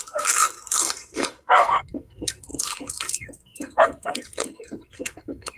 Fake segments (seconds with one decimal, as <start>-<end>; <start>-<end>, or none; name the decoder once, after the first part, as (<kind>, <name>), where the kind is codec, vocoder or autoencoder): 0.0-5.6 (codec, SNAC)

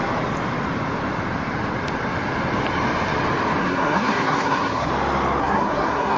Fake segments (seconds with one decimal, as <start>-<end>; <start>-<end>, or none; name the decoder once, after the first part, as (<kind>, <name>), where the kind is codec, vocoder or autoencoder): 3.6-4.9 (codec, SNAC); 5.4-6.2

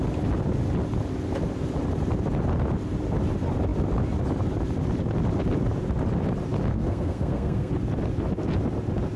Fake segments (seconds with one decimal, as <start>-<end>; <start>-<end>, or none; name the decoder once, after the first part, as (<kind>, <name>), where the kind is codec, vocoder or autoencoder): 6.7-7.7 (codec, SNAC)